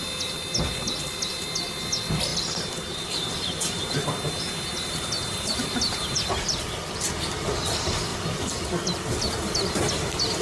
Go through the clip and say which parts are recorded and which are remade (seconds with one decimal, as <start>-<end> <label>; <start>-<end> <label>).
0.0-2.3 recorded; 2.3-7.1 remade; 7.1-8.1 recorded; 8.1-9.9 remade; 9.9-10.4 recorded